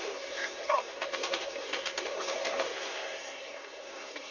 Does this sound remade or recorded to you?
remade